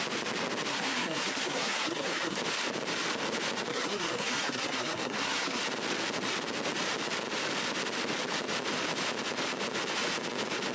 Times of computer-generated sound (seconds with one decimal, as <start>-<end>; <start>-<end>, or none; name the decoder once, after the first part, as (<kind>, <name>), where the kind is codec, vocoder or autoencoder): 0.7-2.4 (codec, SNAC); 3.7-5.6